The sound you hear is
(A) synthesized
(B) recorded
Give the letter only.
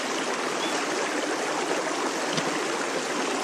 B